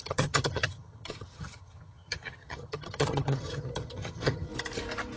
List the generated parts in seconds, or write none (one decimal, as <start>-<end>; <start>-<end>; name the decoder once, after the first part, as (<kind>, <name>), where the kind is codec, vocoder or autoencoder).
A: 0.0-4.5 (vocoder, HiFi-GAN)